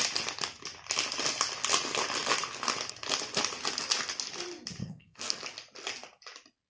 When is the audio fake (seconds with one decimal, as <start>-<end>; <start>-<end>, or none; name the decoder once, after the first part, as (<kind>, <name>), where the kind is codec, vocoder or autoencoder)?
4.8-5.4 (codec, SNAC)